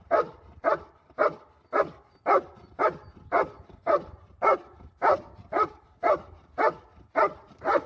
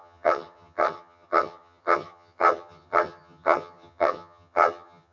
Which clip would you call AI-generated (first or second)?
second